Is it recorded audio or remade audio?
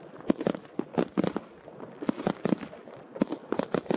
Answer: recorded